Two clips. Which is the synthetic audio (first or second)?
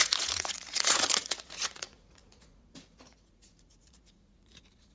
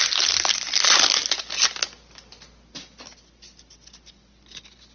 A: first